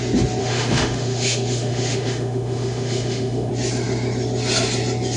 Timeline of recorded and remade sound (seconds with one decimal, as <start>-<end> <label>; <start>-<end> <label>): 0.0-0.4 recorded; 0.4-3.5 remade; 3.5-5.2 recorded